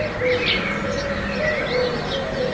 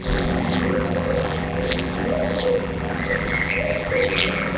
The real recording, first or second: first